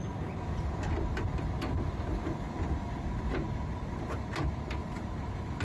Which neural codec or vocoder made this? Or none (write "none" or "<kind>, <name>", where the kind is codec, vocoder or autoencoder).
none